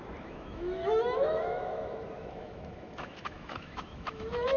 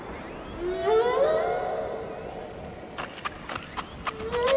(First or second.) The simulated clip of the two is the first